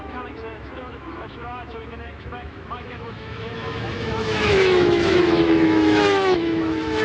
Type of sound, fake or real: fake